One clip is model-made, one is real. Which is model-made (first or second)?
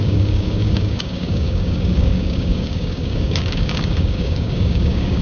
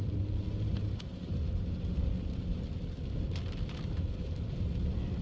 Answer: first